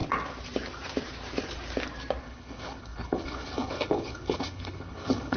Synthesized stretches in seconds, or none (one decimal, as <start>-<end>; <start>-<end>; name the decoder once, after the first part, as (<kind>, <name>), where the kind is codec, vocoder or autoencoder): 2.2-5.4 (codec, HILCodec)